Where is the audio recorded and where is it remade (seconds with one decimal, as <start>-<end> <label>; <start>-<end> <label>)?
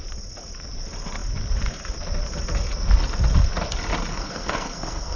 0.0-4.1 recorded; 4.1-5.2 remade